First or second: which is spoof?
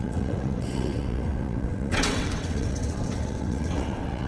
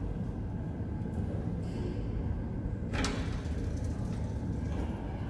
first